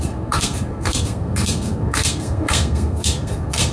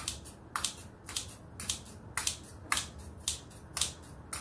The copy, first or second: first